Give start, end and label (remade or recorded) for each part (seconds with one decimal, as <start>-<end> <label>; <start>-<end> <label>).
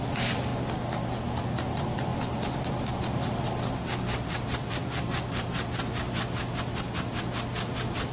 0.0-0.5 remade; 0.5-1.7 recorded; 1.7-2.1 remade; 2.1-3.0 recorded; 3.0-8.1 remade